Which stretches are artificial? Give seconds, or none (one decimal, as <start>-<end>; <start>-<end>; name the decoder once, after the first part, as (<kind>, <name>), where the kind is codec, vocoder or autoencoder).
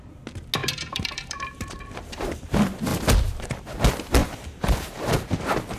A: 0.6-2.5 (vocoder, BigVGAN v2); 4.2-5.3